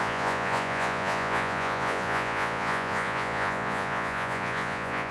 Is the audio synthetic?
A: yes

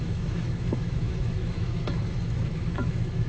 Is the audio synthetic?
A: yes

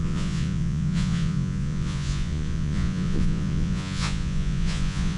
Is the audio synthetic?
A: yes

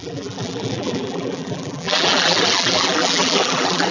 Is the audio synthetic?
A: yes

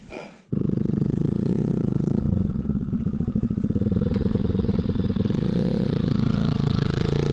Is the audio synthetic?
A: yes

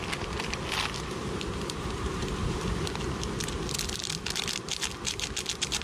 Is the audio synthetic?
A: no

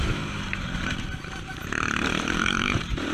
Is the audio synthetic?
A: yes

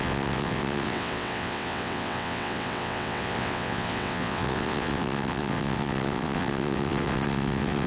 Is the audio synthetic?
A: yes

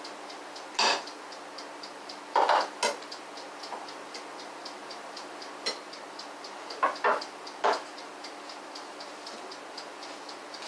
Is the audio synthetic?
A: no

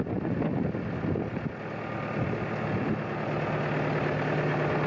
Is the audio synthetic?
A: no